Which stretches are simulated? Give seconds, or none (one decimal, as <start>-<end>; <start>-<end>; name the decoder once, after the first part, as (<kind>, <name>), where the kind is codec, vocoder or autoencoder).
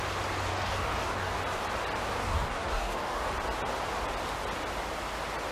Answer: 0.5-1.4 (codec, DAC); 2.2-3.3